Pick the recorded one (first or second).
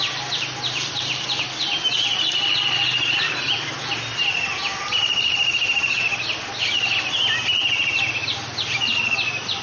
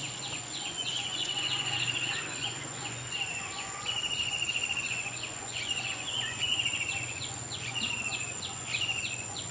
first